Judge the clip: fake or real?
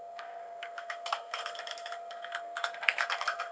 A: fake